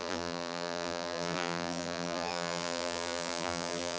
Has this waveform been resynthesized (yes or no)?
yes